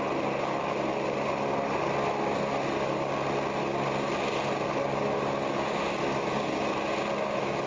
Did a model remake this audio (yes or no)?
no